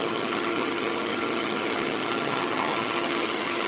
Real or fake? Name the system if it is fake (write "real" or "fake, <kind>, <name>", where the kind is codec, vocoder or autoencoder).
fake, vocoder, HiFi-GAN